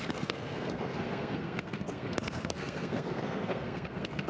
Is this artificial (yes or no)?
yes